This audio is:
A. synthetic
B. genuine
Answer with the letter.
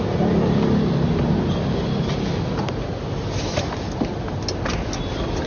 B